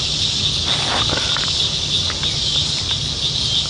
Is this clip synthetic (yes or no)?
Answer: no